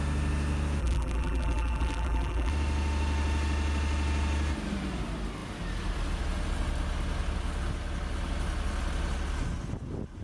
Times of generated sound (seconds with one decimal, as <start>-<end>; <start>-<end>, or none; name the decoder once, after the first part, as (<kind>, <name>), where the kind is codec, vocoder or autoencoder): 0.8-2.5 (vocoder, BigVGAN v2)